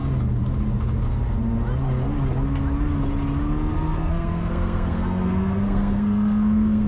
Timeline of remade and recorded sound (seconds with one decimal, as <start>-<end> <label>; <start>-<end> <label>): 0.0-3.7 recorded; 3.7-6.9 remade